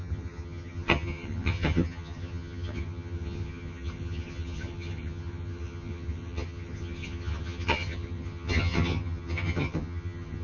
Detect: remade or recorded remade